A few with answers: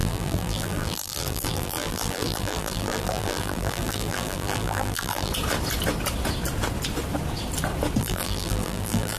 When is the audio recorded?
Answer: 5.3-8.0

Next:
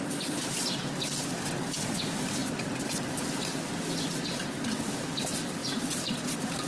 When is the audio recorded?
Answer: 0.0-2.4; 2.9-5.6; 6.1-6.7